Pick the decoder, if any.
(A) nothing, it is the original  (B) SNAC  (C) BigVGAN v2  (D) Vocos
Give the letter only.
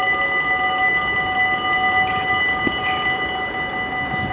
A